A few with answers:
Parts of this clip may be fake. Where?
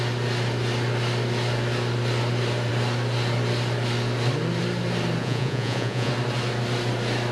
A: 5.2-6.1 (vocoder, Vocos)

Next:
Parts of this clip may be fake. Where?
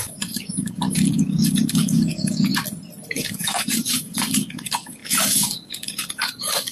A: 0.0-2.5 (codec, DAC); 3.1-6.7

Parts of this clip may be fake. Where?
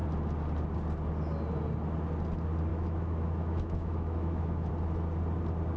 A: 2.7-4.7 (autoencoder, DAC-VAE)